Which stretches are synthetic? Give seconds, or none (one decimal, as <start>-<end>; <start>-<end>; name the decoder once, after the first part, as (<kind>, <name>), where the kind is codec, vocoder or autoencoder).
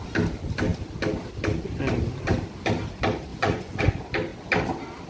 3.3-3.8 (vocoder, Vocos)